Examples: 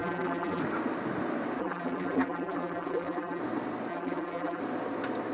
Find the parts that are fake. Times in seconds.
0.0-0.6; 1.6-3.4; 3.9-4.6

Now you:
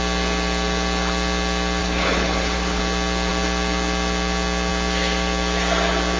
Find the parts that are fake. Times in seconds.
1.8-2.8

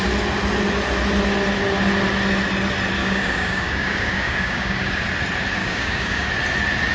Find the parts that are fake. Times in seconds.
3.0-5.0; 5.6-6.3

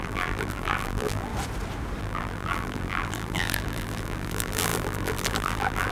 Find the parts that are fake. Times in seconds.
0.0-1.3; 2.0-5.9

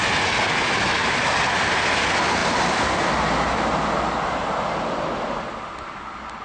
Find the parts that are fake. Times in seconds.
none

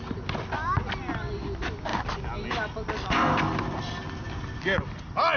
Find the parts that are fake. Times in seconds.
none

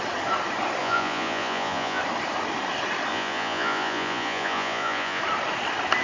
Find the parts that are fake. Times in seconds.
0.8-2.0; 3.1-5.2

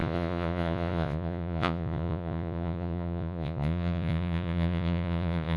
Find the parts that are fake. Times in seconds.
0.0-5.6